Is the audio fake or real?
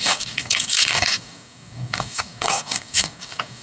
fake